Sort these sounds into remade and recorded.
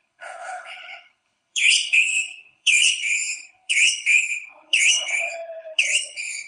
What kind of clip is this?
remade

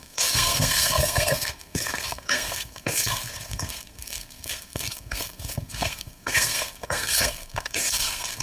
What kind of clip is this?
remade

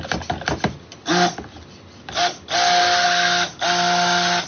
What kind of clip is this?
recorded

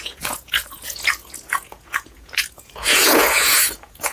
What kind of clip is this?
remade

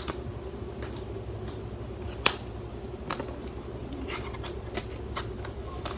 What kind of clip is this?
recorded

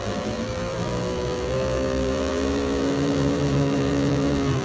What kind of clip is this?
remade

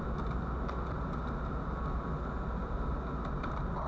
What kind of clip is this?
recorded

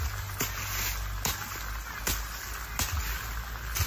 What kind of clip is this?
recorded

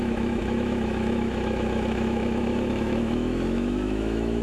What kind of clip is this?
remade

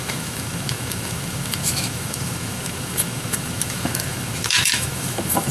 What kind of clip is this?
remade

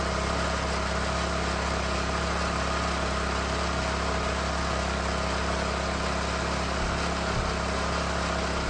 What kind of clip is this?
recorded